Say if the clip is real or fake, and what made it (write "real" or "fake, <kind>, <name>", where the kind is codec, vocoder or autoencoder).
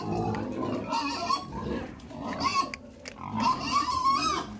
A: real